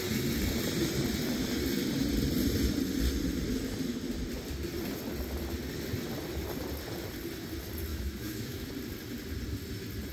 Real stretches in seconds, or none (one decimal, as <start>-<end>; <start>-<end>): 0.0-7.9; 8.7-10.1